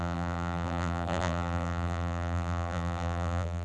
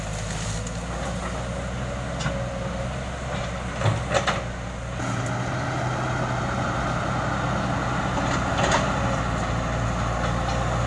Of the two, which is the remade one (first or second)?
first